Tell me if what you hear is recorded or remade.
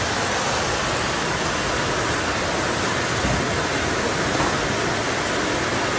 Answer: recorded